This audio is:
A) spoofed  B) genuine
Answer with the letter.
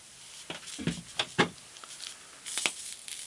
B